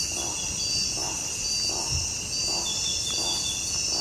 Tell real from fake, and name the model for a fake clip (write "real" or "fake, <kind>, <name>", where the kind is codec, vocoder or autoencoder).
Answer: real